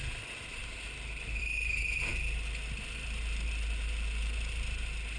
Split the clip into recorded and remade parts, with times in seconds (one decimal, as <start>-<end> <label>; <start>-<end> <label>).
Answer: 0.0-5.2 recorded